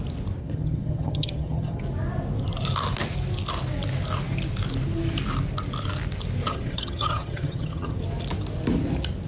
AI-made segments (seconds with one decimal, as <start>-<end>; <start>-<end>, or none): 0.4-1.8; 6.5-8.0